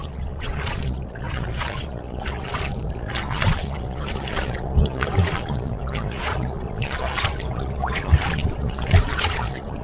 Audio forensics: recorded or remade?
remade